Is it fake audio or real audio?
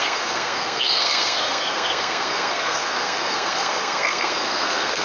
fake